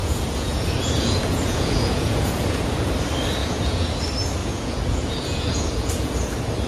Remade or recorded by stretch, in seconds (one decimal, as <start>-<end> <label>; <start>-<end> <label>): 0.0-2.9 remade; 2.9-3.4 recorded; 3.4-4.0 remade; 4.0-4.4 recorded; 4.4-6.1 remade; 6.1-6.7 recorded